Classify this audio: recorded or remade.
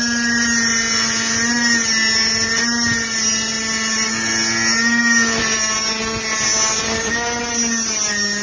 recorded